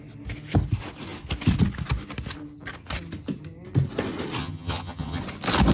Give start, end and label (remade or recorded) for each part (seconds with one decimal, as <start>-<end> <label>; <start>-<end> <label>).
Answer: 0.0-4.4 recorded; 4.4-5.2 remade; 5.2-5.7 recorded